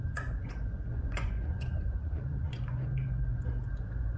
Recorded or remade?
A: remade